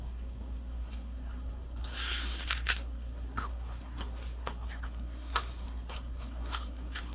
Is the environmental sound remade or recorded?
remade